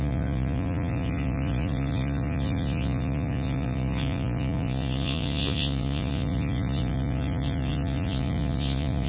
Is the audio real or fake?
fake